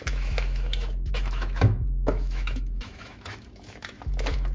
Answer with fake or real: fake